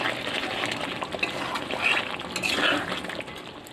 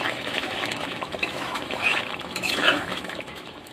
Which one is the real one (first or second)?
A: first